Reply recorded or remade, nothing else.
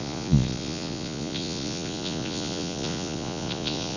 remade